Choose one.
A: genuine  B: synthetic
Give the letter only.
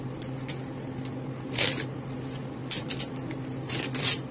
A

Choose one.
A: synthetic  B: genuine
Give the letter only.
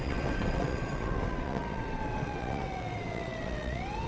A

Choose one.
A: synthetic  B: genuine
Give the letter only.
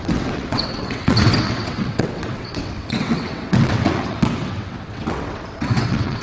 A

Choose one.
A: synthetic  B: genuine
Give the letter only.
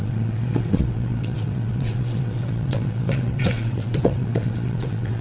A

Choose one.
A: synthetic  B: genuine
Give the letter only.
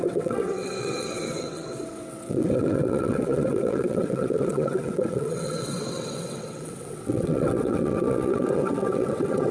A